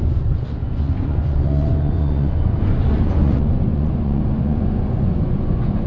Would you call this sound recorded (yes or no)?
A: no